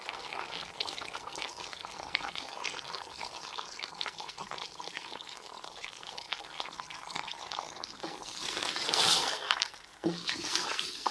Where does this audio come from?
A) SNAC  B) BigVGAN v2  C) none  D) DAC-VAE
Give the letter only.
A